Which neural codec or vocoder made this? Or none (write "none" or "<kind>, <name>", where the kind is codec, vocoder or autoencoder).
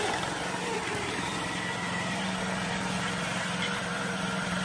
none